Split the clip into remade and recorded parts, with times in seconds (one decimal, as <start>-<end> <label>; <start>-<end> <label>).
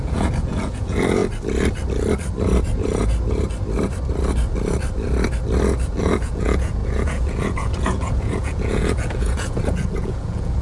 0.0-1.2 remade; 1.2-6.0 recorded; 6.0-10.6 remade